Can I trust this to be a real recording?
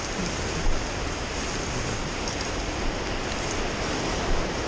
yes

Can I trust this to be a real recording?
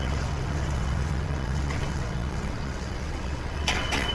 no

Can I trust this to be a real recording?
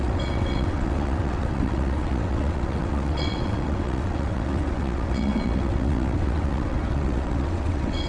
no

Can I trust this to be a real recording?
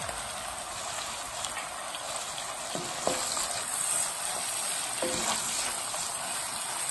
yes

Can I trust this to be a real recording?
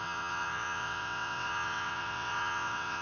no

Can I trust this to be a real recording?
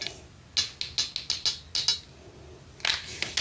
yes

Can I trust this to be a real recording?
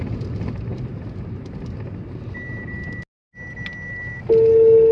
yes